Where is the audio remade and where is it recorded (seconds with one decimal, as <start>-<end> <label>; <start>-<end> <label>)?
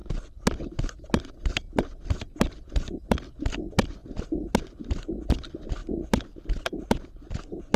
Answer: 0.0-7.8 recorded